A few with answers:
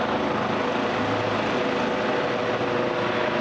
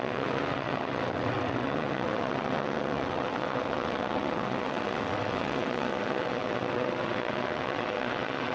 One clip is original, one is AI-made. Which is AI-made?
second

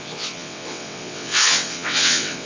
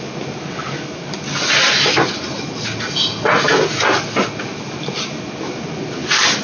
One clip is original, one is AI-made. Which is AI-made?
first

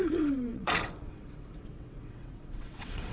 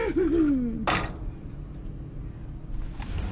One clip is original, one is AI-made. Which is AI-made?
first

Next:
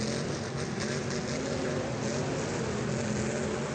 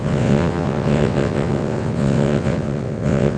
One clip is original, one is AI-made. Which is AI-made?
second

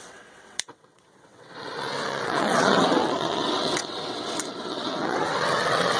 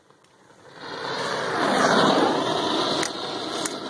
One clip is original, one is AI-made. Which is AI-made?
first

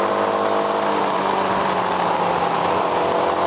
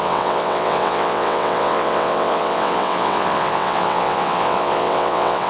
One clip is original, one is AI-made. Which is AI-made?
second